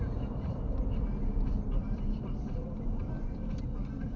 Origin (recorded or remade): remade